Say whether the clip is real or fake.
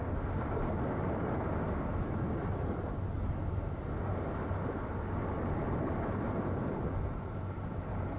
real